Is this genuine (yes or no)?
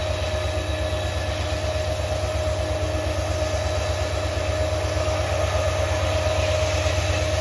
yes